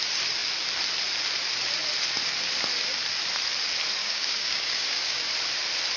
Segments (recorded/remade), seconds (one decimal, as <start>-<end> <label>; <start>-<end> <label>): 0.0-4.0 recorded; 4.0-5.2 remade; 5.2-6.0 recorded

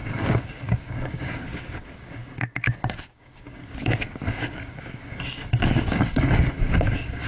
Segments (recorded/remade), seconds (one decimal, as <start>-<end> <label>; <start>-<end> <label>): 0.0-7.3 remade

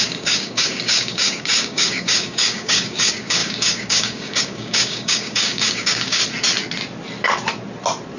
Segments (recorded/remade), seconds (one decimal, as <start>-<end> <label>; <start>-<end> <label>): 0.0-6.2 remade; 6.2-8.2 recorded

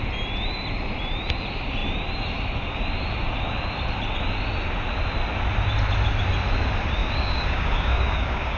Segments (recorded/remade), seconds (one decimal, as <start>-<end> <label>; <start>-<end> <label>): 0.0-7.0 recorded; 7.0-8.6 remade

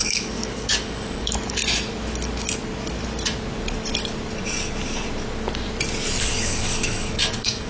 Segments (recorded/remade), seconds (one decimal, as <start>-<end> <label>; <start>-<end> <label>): 0.0-1.6 remade; 1.6-6.2 recorded; 6.2-7.7 remade